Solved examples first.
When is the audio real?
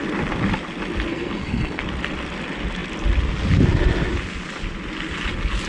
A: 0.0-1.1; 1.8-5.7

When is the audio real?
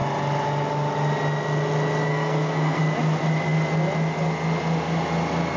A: 0.0-2.1; 2.8-5.6